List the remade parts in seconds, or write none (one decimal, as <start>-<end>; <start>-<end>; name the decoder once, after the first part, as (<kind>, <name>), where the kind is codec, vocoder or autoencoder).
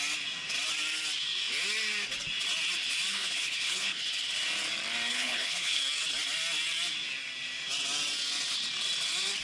3.1-4.0 (codec, HILCodec); 5.1-5.8